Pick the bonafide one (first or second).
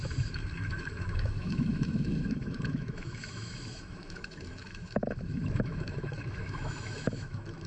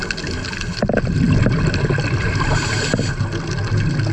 second